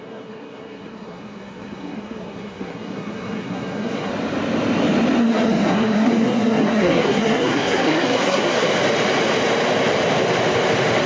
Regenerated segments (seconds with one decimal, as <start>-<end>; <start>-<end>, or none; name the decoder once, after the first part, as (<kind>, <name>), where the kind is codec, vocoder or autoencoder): 0.0-4.1 (codec, SNAC); 5.2-8.7